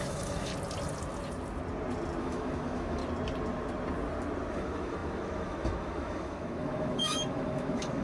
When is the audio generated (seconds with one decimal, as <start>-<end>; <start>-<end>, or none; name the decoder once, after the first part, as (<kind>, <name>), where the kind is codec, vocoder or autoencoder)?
0.0-0.5 (autoencoder, DAC-VAE); 2.2-3.0; 4.5-8.0